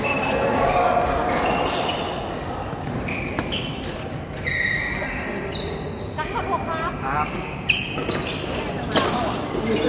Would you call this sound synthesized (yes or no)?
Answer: no